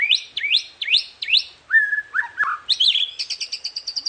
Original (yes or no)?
yes